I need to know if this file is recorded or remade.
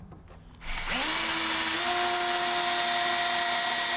recorded